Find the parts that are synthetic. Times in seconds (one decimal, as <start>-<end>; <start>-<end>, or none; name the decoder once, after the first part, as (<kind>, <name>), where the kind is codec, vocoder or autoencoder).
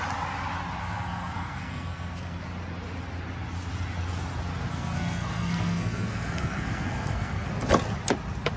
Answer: 0.8-2.4 (codec, SNAC); 4.7-7.5